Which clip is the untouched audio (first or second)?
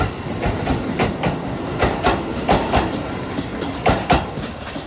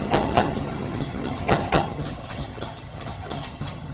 first